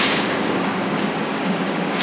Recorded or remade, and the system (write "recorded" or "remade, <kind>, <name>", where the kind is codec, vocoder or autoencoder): remade, codec, DAC